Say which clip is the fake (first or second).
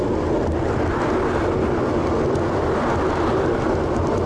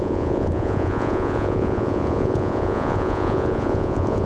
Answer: second